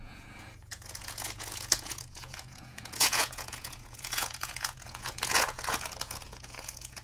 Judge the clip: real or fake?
fake